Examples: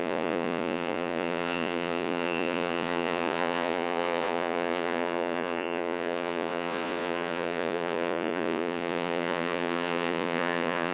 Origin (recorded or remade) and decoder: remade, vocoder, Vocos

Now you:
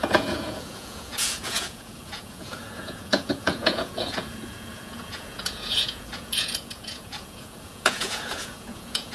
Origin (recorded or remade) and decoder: remade, vocoder, Vocos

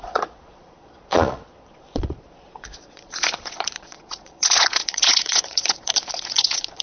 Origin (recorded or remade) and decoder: remade, vocoder, Vocos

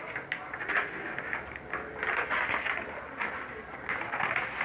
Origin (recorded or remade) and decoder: recorded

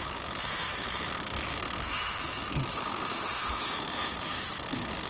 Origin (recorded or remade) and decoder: remade, autoencoder, DAC-VAE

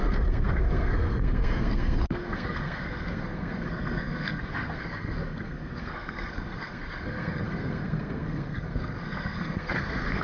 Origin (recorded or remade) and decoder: remade, codec, SNAC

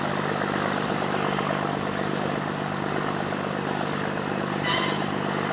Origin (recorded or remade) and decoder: recorded